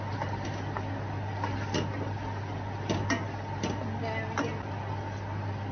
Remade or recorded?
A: recorded